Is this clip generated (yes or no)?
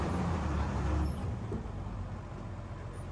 no